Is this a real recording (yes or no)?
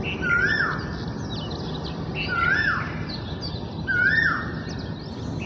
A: yes